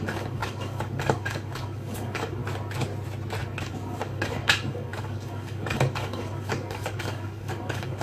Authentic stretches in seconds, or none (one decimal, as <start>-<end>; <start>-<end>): 2.4-3.6

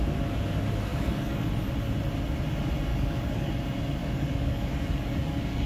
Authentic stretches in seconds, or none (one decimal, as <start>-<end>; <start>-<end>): 0.0-0.9; 1.5-2.9; 3.5-4.0

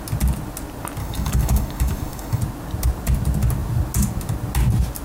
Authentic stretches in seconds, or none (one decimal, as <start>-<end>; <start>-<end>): 0.0-1.0; 2.4-5.0

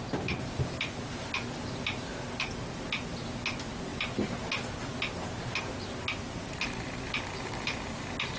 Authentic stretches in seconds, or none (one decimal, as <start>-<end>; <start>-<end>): 0.0-8.4

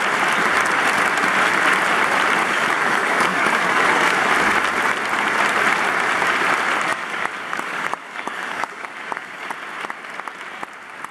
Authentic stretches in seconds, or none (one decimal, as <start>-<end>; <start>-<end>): 0.0-2.4; 4.3-6.9; 9.5-11.1

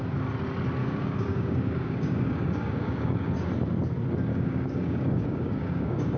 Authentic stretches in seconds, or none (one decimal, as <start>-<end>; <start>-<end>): 0.0-0.8; 3.5-4.3